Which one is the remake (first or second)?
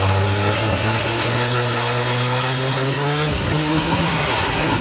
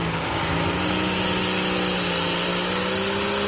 first